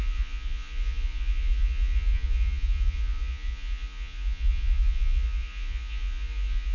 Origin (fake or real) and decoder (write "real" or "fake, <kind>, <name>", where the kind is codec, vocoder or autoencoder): fake, vocoder, Vocos